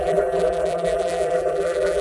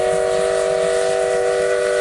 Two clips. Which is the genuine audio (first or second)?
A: second